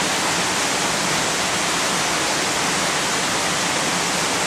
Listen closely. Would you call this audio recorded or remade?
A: recorded